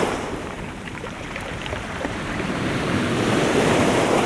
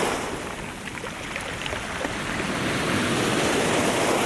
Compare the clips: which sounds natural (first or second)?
second